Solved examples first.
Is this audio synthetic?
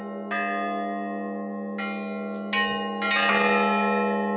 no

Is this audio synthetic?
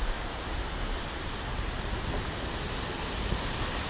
no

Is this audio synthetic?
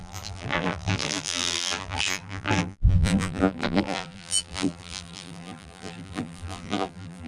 yes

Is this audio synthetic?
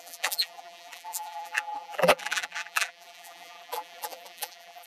yes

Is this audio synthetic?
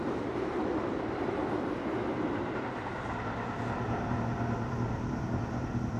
no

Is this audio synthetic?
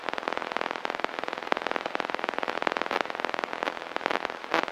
yes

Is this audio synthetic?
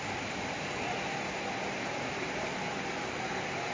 no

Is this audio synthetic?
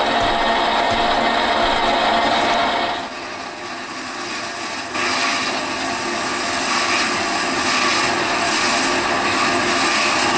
no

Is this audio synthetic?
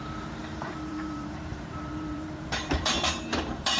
yes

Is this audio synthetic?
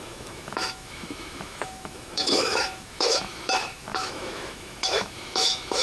yes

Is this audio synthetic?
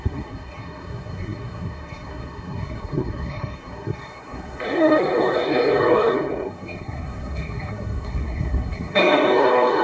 yes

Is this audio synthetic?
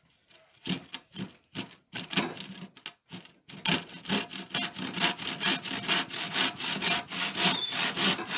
no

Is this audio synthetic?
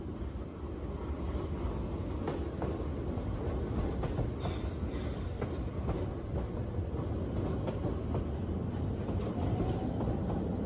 no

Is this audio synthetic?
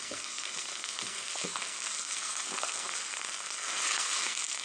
yes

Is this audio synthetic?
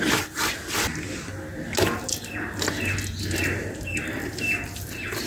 no